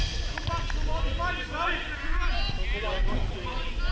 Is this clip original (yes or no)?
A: yes